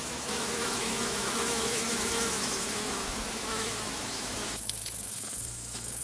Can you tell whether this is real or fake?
fake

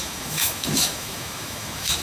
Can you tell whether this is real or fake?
fake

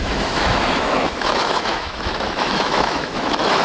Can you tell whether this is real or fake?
fake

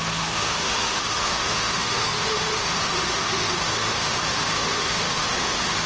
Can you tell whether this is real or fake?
fake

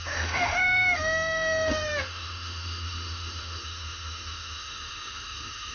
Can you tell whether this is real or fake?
fake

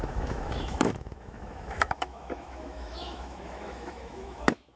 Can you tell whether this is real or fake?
fake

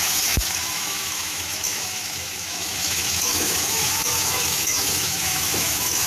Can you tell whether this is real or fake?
fake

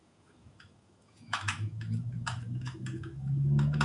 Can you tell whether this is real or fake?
fake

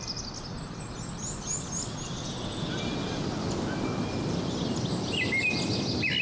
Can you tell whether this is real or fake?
real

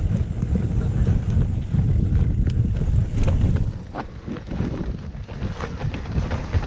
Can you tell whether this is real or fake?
real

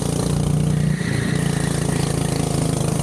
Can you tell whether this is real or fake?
real